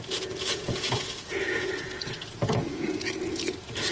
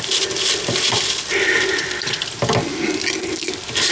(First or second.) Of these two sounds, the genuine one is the second